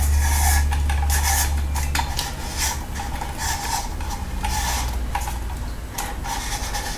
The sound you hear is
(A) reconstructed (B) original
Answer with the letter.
B